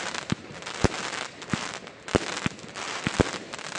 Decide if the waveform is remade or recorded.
recorded